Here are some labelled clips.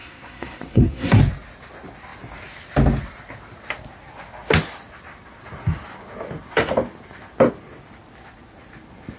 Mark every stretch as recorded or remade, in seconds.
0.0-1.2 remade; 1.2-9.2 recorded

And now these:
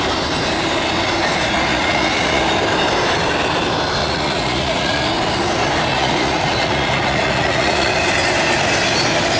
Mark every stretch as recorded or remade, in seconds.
0.0-1.7 recorded; 1.7-2.4 remade; 2.4-4.0 recorded; 4.0-5.1 remade; 5.1-5.9 recorded; 5.9-7.9 remade; 7.9-9.4 recorded